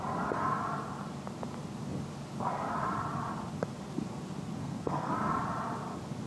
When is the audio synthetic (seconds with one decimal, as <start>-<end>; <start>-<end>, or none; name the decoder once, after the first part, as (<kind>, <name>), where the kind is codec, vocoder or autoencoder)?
4.6-5.1 (codec, SNAC)